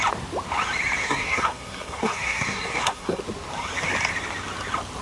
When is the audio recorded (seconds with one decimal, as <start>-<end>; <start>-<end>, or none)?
0.0-1.0; 3.2-5.0